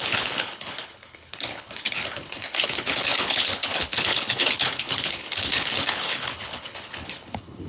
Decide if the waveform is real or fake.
fake